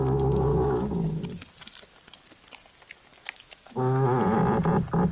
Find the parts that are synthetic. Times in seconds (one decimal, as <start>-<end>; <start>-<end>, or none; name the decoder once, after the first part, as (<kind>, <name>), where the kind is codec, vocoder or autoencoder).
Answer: 0.5-1.5 (autoencoder, DAC-VAE); 3.1-4.2